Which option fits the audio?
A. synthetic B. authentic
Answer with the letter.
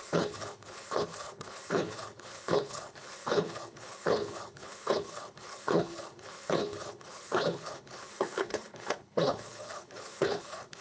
A